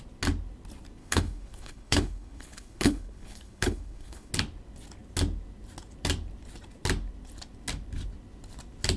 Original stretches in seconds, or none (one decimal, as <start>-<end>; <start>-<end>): 0.0-1.0; 4.3-9.0